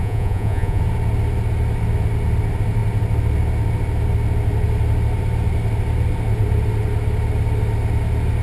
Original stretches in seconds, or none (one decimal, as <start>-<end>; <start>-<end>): 0.8-8.4